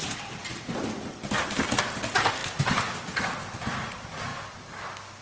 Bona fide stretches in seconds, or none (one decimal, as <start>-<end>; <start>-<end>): 0.0-5.2

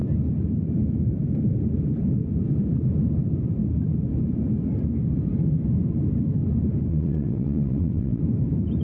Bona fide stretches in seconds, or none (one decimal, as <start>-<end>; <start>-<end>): 0.0-6.9; 8.2-8.8